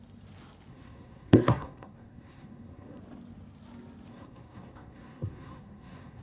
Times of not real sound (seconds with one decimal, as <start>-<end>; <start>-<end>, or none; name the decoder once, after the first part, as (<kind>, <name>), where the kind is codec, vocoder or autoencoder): 0.7-3.0 (codec, SNAC); 4.1-6.2